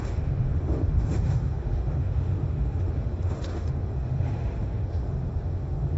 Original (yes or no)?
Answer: no